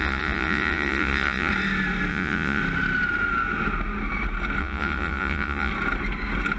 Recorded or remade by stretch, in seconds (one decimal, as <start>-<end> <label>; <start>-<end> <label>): 0.0-1.5 remade; 1.5-2.1 recorded; 2.1-2.6 remade; 2.6-4.6 recorded; 4.6-5.7 remade; 5.7-6.6 recorded